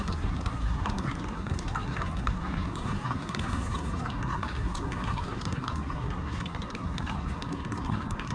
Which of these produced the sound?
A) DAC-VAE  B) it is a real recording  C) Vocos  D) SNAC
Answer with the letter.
D